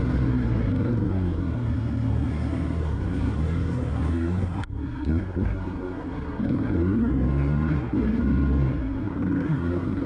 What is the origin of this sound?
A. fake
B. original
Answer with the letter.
A